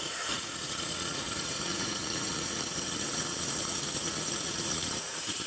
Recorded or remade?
remade